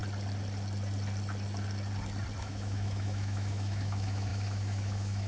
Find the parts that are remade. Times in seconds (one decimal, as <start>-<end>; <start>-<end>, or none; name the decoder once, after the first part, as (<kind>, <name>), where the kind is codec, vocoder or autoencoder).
2.4-5.3 (autoencoder, DAC-VAE)